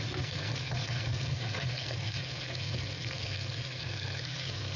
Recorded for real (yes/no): no